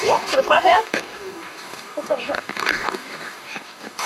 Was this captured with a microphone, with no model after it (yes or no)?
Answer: no